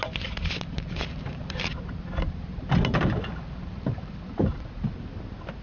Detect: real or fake real